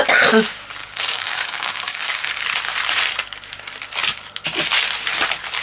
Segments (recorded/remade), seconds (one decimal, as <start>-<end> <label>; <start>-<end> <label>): 0.0-0.8 recorded; 0.8-2.3 remade; 2.3-5.6 recorded